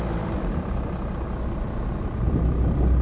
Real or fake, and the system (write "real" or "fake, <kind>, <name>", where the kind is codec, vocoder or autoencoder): real